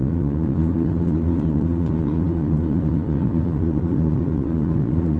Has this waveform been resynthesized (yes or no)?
yes